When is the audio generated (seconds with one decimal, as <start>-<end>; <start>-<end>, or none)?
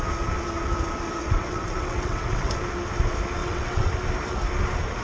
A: 1.2-2.5; 3.4-3.9